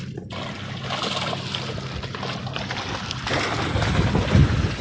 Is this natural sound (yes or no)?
yes